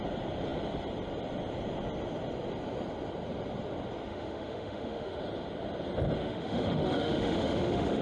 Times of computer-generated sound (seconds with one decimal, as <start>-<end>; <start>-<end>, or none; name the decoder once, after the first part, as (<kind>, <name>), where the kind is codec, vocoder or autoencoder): 4.1-5.2 (autoencoder, DAC-VAE); 6.2-8.0